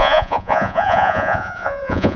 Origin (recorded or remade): remade